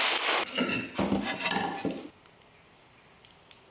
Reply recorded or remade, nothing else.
recorded